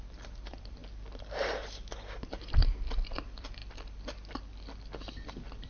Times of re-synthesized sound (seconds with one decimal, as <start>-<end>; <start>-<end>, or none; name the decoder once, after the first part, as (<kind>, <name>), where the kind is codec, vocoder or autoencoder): 0.0-0.8 (vocoder, BigVGAN v2); 2.3-3.6; 5.3-5.7